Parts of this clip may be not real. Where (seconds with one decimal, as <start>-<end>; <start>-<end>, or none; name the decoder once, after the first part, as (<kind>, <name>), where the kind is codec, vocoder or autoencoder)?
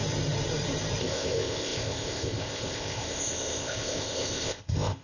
1.0-5.0 (codec, ZipCodec)